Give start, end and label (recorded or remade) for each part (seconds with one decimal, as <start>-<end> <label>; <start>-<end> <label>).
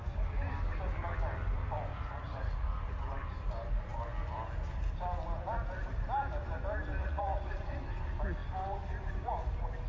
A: 0.0-1.9 recorded; 1.9-3.0 remade; 3.0-7.0 recorded; 7.0-7.8 remade; 7.8-9.9 recorded